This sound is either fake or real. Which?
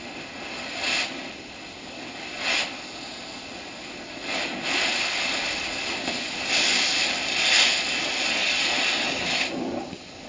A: real